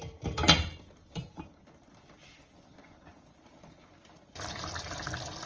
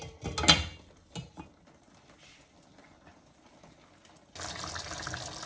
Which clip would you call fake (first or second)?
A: first